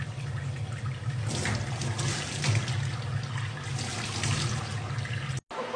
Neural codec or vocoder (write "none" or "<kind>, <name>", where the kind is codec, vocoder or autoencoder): none